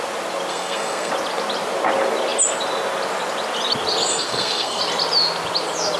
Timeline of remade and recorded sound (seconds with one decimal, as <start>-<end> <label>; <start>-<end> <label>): 0.0-0.5 recorded; 0.5-1.1 remade; 1.1-4.1 recorded; 4.1-4.8 remade; 4.8-6.0 recorded